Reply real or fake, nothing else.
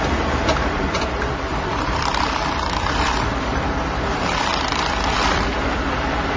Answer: fake